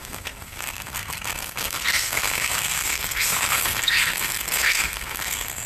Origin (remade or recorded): remade